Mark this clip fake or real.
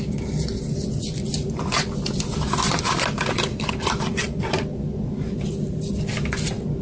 real